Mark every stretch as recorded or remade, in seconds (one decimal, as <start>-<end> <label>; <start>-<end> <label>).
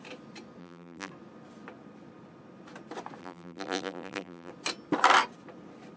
0.0-0.6 recorded; 0.6-1.1 remade; 1.1-3.2 recorded; 3.2-4.5 remade; 4.5-6.0 recorded